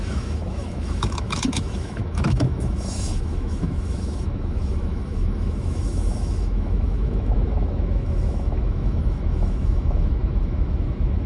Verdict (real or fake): fake